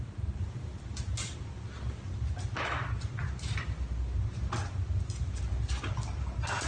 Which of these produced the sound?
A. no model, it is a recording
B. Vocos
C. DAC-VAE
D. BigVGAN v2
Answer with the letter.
A